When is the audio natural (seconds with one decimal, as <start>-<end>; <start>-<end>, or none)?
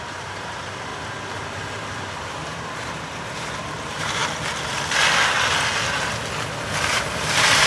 0.9-1.4; 4.2-6.9